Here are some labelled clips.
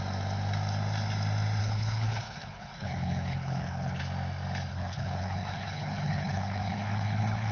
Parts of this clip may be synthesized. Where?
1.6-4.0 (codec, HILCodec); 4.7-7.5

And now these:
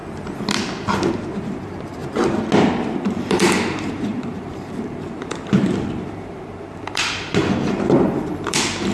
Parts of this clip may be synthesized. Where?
1.1-2.0 (vocoder, BigVGAN v2); 2.6-8.9

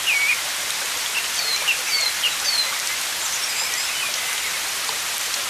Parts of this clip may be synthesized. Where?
none

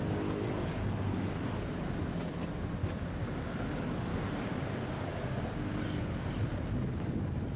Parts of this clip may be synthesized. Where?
2.8-3.6 (codec, DAC); 4.1-5.8

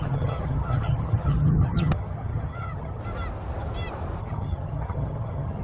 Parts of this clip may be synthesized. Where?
0.0-3.0 (vocoder, HiFi-GAN); 4.2-5.6